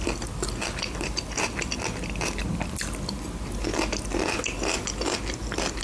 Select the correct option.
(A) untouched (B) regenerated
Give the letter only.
A